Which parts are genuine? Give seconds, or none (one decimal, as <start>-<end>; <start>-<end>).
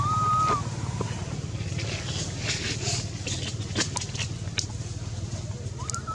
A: 0.0-6.1